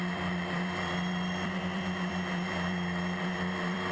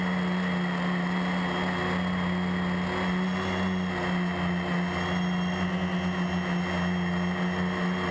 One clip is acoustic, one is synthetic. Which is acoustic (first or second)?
second